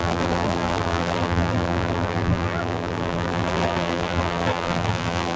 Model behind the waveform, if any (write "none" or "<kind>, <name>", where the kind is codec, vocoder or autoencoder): vocoder, BigVGAN v2